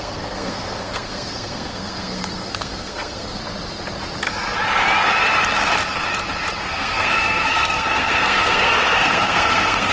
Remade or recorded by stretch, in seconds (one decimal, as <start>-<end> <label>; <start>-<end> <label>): 0.0-3.4 remade; 3.4-6.6 recorded; 6.6-9.9 remade